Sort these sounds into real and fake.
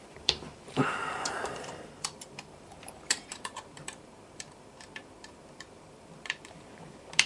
fake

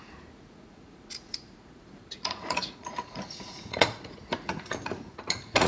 fake